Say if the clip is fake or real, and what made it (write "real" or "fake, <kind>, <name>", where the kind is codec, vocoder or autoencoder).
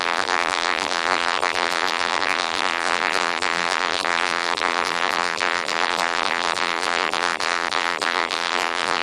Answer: fake, vocoder, BigVGAN v2